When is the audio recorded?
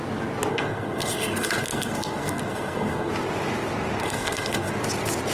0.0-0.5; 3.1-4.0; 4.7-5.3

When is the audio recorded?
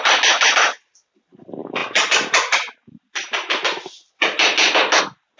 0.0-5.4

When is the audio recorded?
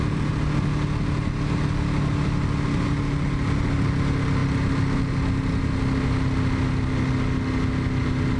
0.0-8.4